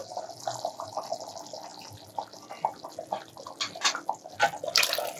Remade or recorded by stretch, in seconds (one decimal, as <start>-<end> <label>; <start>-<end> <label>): 0.0-5.2 recorded